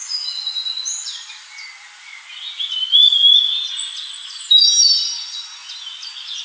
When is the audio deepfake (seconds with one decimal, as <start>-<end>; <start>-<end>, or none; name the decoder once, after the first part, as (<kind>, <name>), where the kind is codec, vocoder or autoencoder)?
none